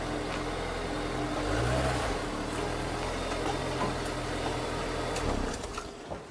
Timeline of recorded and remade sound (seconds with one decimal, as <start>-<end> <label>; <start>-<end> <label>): 0.0-6.3 recorded